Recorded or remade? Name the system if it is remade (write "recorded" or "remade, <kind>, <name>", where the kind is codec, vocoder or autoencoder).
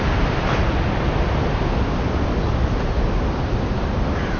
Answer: recorded